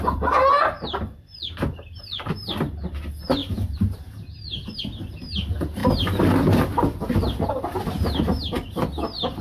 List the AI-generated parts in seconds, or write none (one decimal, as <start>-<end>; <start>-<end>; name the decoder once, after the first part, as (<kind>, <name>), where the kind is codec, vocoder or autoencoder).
none